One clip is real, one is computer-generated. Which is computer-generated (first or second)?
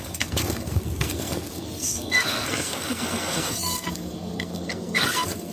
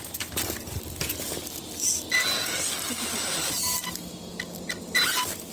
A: first